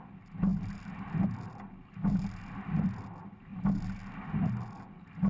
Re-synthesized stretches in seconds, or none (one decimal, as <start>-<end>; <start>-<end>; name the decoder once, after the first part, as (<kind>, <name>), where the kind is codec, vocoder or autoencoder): none